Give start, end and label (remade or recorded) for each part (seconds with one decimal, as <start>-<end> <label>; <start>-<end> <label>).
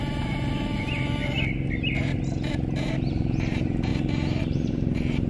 0.0-1.2 remade; 1.2-2.9 recorded; 2.9-3.9 remade; 3.9-4.4 recorded; 4.4-5.3 remade